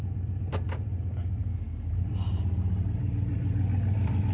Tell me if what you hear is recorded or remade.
remade